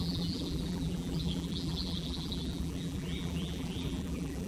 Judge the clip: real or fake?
fake